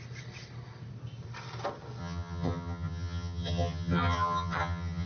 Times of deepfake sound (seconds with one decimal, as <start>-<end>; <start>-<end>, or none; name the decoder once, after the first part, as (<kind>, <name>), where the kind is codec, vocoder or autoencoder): 2.0-5.1 (vocoder, HiFi-GAN)